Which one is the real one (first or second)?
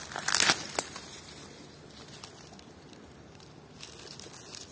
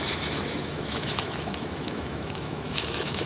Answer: first